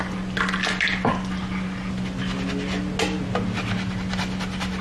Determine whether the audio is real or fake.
real